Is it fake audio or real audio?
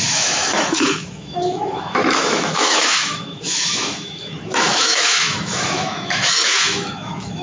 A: fake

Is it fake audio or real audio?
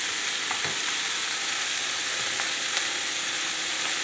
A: real